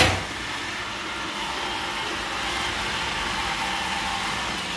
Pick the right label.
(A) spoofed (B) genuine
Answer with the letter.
B